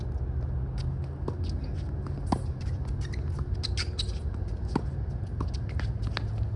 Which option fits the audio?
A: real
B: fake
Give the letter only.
A